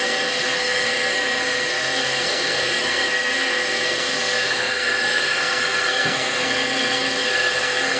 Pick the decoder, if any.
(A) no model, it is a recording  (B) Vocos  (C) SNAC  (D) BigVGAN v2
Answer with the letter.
C